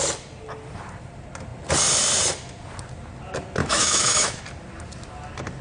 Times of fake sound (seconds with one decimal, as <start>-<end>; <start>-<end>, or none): 3.6-4.4